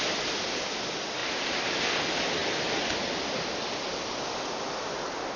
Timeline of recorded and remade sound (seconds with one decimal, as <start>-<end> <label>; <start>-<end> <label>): 0.0-5.4 recorded